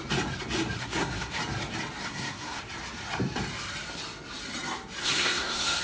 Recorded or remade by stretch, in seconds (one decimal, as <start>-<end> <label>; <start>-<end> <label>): 0.0-0.8 recorded; 0.8-1.4 remade; 1.4-2.0 recorded; 2.0-2.6 remade; 2.6-5.0 recorded; 5.0-5.8 remade